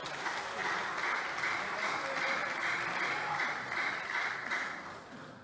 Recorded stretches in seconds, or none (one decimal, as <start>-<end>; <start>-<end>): 0.0-5.4